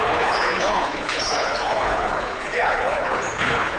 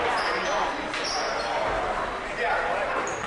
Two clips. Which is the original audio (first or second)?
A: second